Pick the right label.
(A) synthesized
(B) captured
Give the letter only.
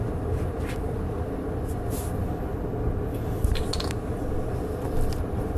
B